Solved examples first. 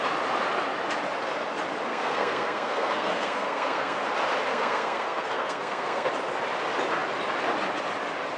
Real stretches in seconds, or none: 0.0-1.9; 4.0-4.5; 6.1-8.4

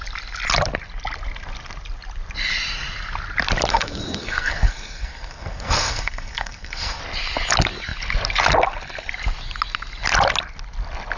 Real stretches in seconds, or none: 0.0-3.7; 7.0-11.2

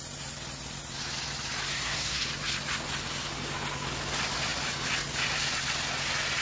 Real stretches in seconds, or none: 0.0-1.7; 2.2-6.4

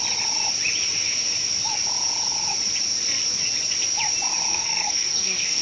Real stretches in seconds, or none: 0.0-4.5

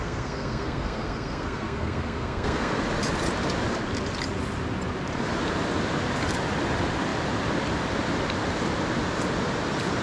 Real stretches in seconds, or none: 2.8-10.0

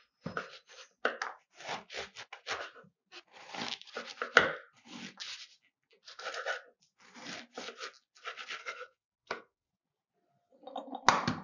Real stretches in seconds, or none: 0.0-8.6; 9.7-11.4